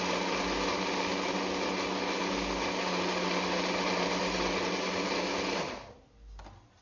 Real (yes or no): yes